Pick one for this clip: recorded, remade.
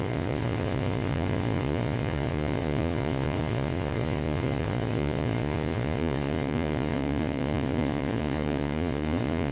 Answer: remade